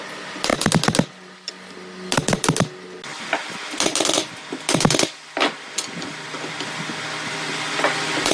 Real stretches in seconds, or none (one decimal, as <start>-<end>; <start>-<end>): 0.0-8.3